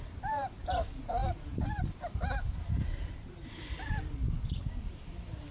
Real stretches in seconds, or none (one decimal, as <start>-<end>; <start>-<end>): 0.0-5.5